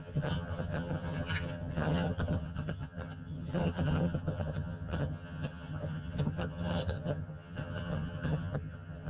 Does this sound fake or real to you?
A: fake